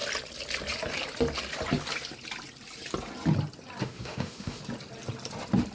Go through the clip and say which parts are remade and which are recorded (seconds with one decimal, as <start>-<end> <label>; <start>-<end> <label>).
0.0-3.8 recorded; 3.8-4.6 remade; 4.6-5.7 recorded